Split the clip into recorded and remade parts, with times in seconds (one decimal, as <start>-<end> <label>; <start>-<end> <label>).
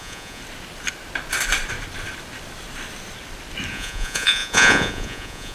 0.0-0.4 remade; 0.4-3.7 recorded; 3.7-5.5 remade